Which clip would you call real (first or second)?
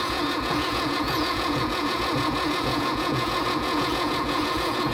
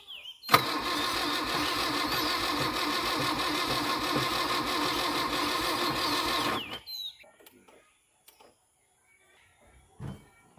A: second